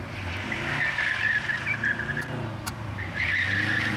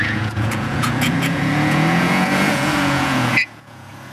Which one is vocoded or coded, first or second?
second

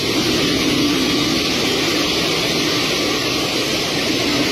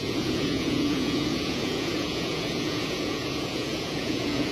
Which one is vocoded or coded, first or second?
second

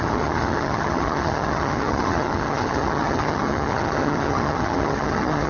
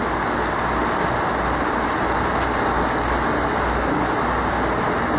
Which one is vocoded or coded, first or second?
first